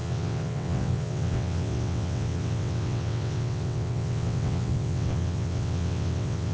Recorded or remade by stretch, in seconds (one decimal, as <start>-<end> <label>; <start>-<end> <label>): 0.0-6.5 remade